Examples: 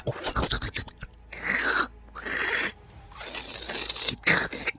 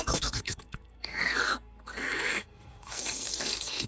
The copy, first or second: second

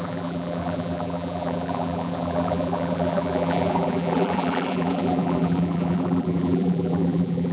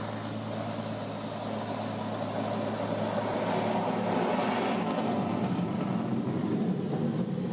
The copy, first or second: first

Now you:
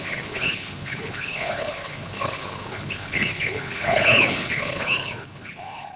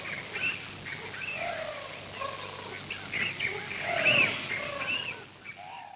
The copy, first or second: first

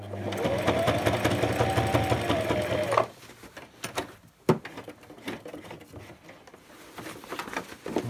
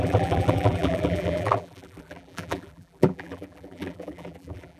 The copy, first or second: second